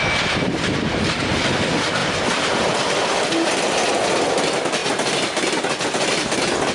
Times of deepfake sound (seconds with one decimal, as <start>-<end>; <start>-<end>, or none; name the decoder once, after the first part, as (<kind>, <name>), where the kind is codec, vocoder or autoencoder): 2.0-3.3 (vocoder, BigVGAN v2)